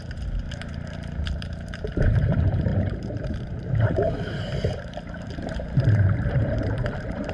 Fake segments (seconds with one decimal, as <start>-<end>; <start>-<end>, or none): 0.0-7.3